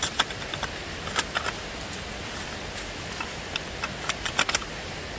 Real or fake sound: real